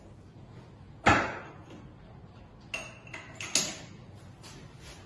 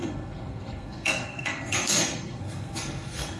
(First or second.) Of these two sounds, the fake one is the second